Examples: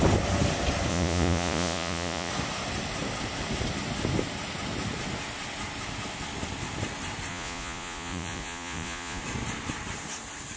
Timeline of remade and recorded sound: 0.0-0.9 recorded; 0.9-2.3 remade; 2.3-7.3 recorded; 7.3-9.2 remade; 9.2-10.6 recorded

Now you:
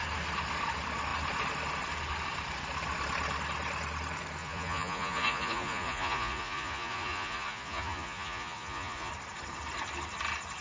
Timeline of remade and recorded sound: 0.0-4.4 recorded; 4.4-9.1 remade; 9.1-10.6 recorded